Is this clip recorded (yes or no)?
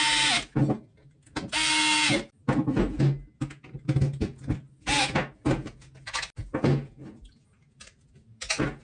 yes